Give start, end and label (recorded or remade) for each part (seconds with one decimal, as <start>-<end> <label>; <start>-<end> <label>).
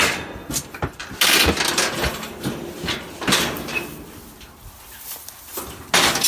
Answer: 0.0-6.3 recorded